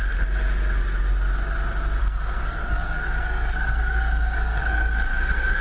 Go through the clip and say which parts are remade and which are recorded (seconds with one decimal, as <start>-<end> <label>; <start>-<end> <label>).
0.0-2.0 recorded; 2.0-5.6 remade